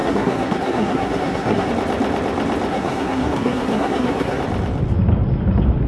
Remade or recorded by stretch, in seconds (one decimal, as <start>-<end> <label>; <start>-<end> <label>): 0.0-1.7 remade; 1.7-2.7 recorded; 2.7-4.4 remade; 4.4-5.9 recorded